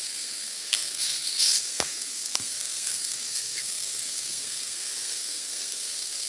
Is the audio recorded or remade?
remade